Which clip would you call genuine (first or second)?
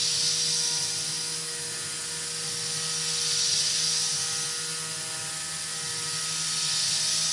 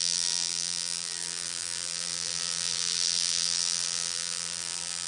first